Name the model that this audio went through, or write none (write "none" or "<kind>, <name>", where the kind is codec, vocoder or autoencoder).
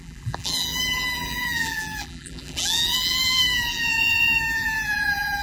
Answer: vocoder, BigVGAN v2